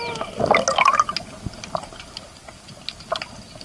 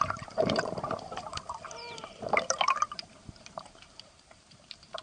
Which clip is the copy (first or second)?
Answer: second